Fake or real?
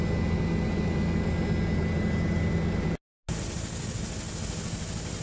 real